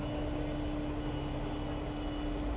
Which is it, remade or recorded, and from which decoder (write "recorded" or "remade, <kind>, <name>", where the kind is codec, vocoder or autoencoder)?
recorded